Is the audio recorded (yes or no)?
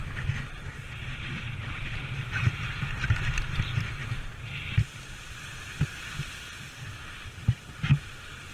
yes